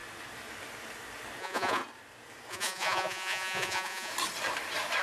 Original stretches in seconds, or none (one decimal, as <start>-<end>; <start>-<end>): 0.0-1.4; 1.8-2.5; 4.1-5.0